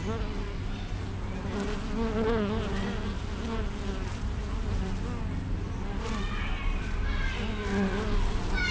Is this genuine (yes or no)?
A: yes